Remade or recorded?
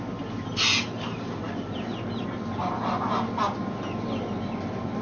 recorded